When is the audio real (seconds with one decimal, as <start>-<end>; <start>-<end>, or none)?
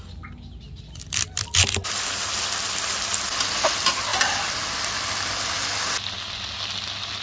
0.0-7.2